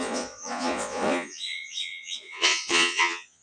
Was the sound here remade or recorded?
remade